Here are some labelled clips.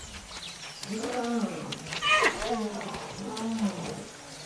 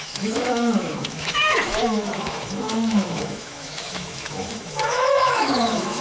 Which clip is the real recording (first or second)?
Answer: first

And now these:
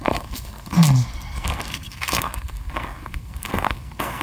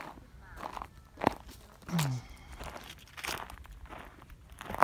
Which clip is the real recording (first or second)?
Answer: second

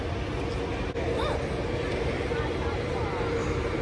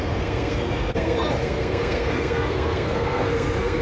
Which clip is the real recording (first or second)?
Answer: first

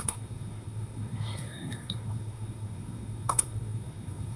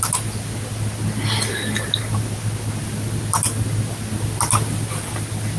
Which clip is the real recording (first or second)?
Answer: second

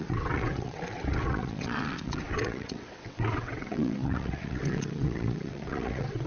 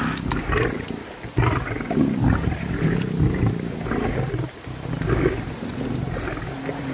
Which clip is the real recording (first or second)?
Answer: second